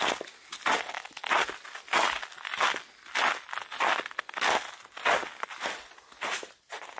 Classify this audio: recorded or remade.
recorded